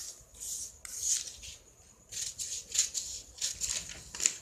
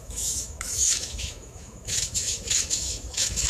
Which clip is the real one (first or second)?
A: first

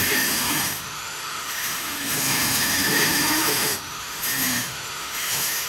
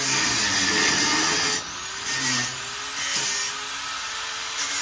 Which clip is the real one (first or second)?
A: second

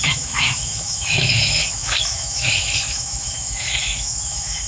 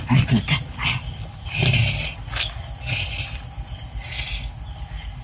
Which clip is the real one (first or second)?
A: second